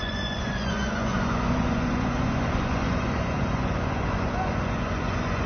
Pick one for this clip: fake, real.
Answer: fake